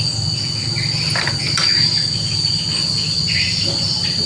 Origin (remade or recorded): recorded